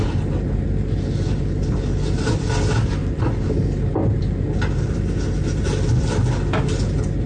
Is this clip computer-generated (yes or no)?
no